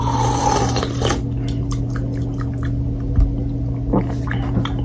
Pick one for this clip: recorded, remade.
recorded